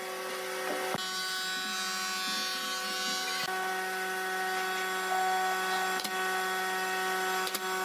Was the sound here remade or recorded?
recorded